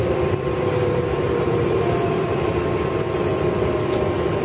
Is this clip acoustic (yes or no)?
yes